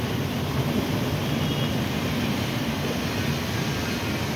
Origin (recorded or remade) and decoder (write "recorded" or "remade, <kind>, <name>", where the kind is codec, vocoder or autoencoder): recorded